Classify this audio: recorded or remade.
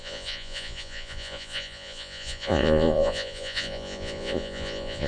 remade